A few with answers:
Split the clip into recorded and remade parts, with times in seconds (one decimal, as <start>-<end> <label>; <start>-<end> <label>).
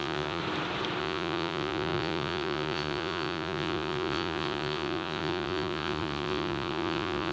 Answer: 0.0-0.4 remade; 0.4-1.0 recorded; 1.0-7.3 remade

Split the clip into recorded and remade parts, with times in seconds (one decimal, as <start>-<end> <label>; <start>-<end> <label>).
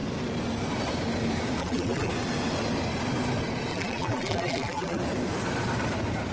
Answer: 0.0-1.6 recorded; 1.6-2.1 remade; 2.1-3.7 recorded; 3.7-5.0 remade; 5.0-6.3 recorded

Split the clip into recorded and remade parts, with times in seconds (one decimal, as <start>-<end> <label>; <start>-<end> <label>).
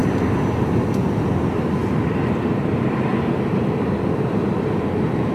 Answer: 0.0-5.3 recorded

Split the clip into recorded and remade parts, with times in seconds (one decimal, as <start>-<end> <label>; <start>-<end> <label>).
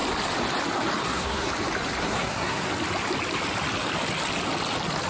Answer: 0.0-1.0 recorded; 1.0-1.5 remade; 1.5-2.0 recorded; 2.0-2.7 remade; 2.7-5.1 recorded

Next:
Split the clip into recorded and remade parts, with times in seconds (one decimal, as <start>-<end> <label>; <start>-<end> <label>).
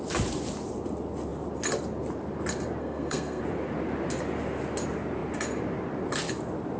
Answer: 0.0-2.8 recorded; 2.8-3.4 remade; 3.4-6.8 recorded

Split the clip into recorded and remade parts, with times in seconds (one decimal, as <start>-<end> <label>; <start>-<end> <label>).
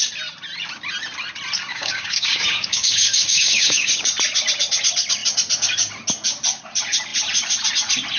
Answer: 0.0-1.7 recorded; 1.7-4.1 remade; 4.1-8.2 recorded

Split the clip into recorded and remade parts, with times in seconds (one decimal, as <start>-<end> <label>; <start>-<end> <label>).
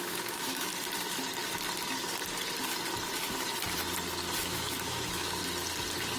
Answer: 0.0-0.7 remade; 0.7-4.4 recorded; 4.4-5.4 remade; 5.4-6.2 recorded